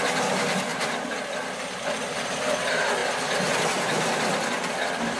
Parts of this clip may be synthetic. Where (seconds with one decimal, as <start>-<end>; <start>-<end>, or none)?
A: 0.7-1.7